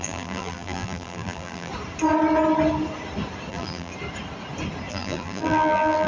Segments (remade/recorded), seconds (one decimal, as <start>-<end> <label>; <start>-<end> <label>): 0.0-1.7 remade; 1.7-3.5 recorded; 3.5-3.9 remade; 3.9-4.9 recorded; 4.9-6.1 remade